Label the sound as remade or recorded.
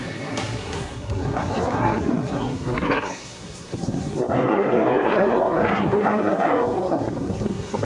remade